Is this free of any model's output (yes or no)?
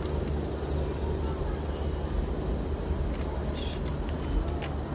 yes